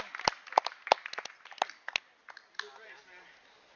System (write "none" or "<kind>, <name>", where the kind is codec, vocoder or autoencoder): none